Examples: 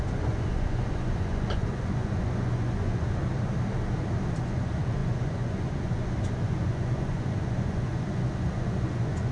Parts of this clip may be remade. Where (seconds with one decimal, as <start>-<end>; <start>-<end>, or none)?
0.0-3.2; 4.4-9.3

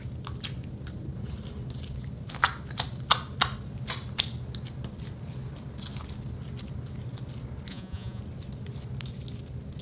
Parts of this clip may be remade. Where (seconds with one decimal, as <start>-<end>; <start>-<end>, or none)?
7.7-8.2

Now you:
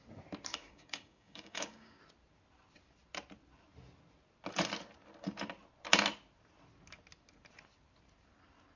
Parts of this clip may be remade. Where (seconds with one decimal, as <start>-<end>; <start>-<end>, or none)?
0.5-2.0

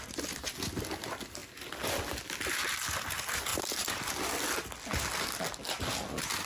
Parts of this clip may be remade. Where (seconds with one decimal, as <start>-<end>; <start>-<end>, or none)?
3.5-4.0

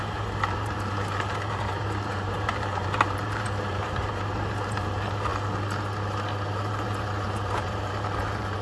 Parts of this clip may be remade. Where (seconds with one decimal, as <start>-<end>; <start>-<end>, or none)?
0.0-5.3; 6.6-8.6